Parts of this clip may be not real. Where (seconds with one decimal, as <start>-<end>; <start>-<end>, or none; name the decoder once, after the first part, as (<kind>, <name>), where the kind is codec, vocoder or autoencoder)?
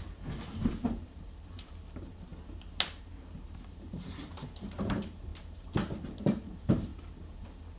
0.0-2.3 (vocoder, BigVGAN v2); 3.0-6.9